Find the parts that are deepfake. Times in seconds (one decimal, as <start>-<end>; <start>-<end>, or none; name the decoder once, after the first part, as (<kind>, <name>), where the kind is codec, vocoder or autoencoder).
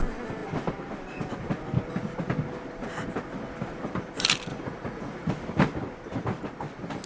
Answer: 4.5-5.3 (vocoder, Vocos)